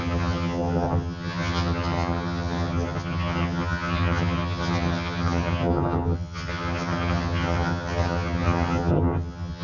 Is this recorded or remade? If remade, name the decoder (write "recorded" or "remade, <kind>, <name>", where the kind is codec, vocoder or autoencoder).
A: remade, vocoder, HiFi-GAN